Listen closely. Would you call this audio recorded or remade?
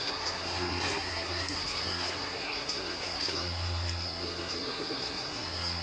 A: remade